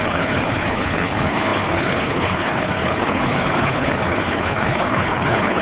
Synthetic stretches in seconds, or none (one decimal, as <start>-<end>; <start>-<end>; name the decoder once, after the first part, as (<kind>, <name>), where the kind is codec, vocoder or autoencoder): 0.0-5.6 (codec, HILCodec)